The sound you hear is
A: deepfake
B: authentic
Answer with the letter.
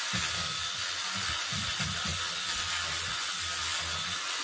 B